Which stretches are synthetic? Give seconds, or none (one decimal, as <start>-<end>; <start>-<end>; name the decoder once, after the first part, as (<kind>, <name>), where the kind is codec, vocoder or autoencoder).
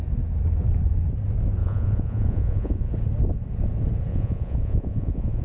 1.6-2.9 (vocoder, Vocos); 4.1-5.4